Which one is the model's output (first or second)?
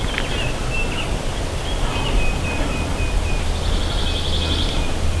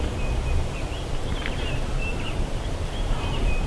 second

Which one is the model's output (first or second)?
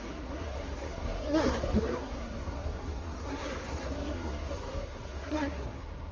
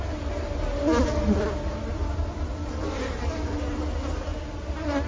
first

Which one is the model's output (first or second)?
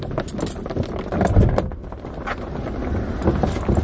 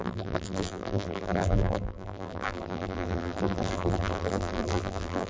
second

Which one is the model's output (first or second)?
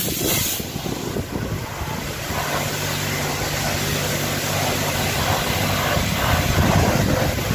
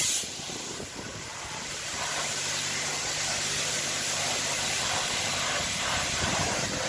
second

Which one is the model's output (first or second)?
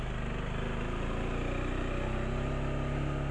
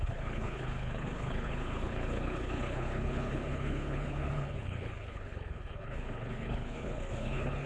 second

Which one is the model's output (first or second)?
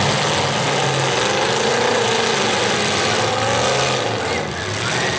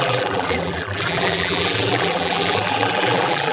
second